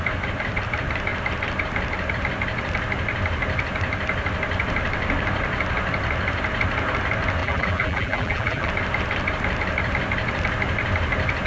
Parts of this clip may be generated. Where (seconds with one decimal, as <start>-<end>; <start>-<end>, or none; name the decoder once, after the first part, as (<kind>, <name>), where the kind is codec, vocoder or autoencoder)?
7.4-8.7 (vocoder, BigVGAN v2)